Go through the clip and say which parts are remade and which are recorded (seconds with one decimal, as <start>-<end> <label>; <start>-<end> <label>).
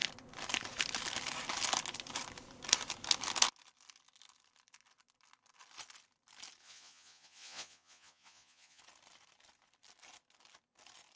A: 0.0-6.6 recorded; 6.6-8.8 remade; 8.8-11.2 recorded